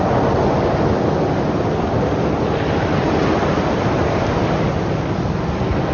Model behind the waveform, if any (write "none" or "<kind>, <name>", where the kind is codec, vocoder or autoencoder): none